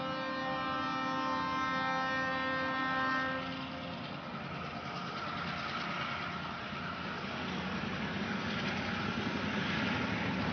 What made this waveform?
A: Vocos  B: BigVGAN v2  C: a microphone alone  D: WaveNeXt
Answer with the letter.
C